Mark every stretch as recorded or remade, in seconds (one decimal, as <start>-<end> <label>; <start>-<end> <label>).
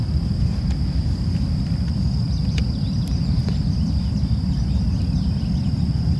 0.0-6.2 recorded